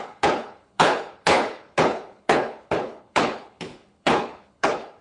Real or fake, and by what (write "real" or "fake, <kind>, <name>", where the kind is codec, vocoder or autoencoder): fake, codec, HILCodec